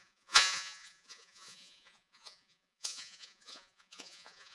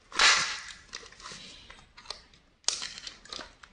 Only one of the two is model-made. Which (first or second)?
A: first